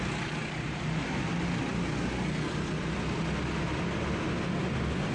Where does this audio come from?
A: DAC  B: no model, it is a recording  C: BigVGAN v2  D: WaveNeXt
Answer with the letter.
B